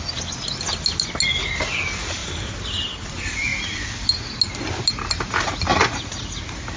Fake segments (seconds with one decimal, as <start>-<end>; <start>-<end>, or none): 2.2-2.8